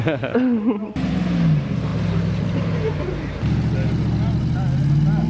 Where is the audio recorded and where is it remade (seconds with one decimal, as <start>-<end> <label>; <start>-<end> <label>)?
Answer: 0.0-5.3 recorded